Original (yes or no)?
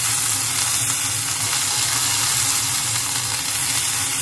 yes